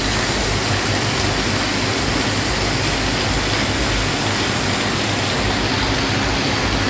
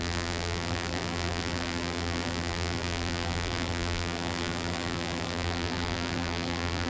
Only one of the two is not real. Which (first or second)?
second